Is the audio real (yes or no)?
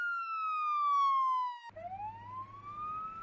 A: yes